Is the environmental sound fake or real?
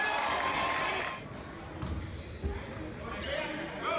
real